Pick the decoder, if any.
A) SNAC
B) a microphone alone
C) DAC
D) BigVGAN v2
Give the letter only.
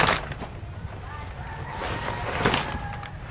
B